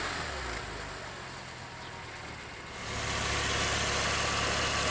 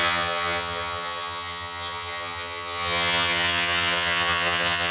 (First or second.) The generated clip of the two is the second